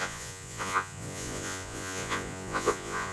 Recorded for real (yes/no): no